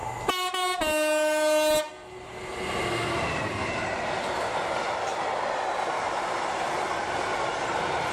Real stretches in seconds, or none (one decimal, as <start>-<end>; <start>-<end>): 0.0-8.1